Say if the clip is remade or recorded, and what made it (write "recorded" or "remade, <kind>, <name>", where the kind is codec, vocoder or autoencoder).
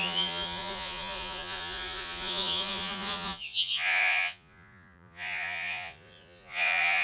remade, vocoder, Vocos